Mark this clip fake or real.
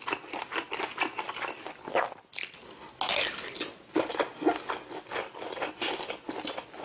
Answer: real